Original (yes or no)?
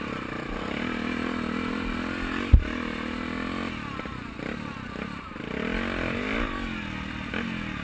yes